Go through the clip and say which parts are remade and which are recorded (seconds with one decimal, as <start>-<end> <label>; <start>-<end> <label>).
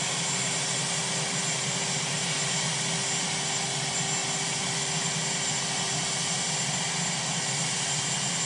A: 0.0-4.2 recorded; 4.2-5.1 remade; 5.1-8.5 recorded